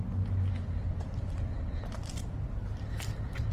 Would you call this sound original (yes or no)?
yes